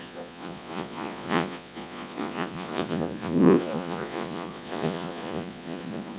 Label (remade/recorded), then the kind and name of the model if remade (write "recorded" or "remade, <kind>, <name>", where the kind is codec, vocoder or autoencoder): remade, vocoder, Vocos